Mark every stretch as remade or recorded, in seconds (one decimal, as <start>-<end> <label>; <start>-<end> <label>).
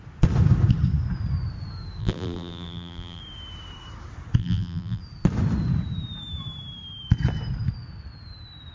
0.0-2.0 recorded; 2.0-3.2 remade; 3.2-4.4 recorded; 4.4-5.0 remade; 5.0-8.7 recorded